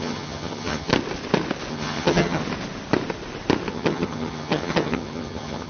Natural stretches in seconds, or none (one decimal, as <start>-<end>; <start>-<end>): 0.9-1.7; 2.4-3.7